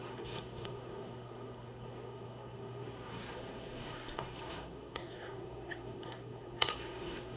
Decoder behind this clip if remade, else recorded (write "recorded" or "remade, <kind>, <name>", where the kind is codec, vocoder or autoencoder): remade, codec, SNAC